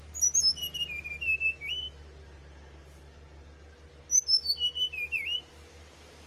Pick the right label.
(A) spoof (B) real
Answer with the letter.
B